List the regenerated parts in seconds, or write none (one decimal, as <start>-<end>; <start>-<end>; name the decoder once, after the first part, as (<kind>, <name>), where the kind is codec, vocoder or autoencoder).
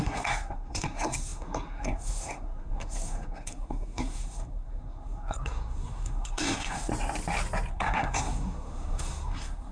0.0-6.9 (codec, SNAC); 7.7-9.7